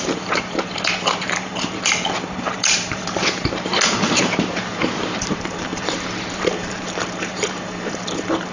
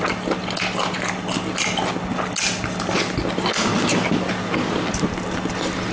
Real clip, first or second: second